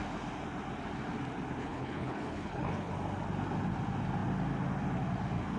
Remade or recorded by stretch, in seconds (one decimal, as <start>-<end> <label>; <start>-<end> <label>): 0.0-1.6 recorded; 1.6-2.9 remade; 2.9-5.6 recorded